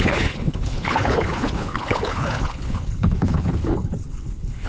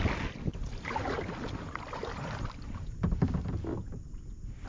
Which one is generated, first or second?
first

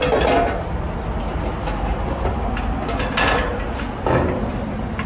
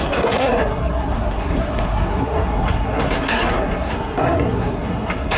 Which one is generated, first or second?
second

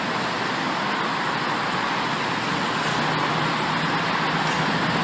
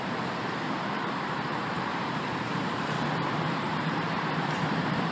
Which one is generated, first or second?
second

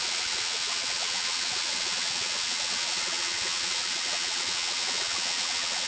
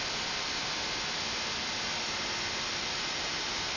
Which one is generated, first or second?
first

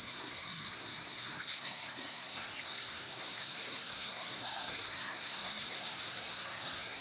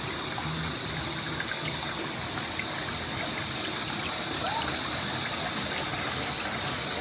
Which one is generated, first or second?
first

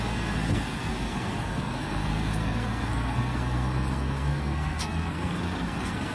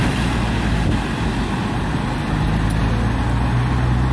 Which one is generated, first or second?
first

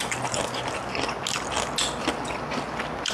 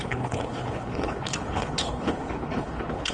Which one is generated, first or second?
second